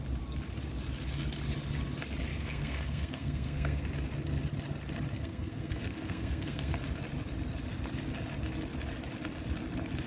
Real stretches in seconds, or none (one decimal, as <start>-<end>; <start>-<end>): 0.0-2.3; 3.8-5.1; 6.7-10.1